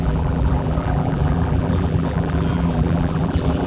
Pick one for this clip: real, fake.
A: fake